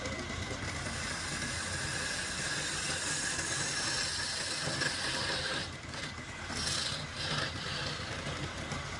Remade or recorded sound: recorded